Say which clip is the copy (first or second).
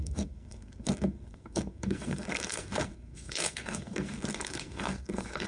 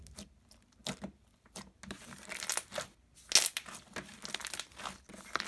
first